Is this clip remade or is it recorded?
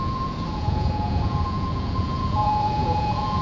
remade